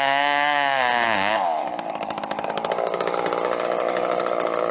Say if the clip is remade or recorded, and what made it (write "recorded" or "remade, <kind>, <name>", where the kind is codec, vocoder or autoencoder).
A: remade, codec, DAC